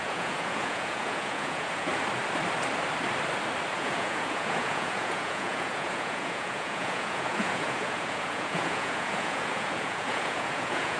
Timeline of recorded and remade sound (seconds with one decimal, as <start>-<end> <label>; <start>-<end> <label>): 0.0-1.9 remade; 1.9-3.7 recorded; 3.7-11.0 remade